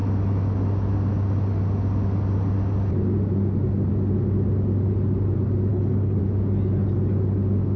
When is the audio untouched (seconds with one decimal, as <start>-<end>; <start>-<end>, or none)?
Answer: 0.0-5.7; 6.2-7.8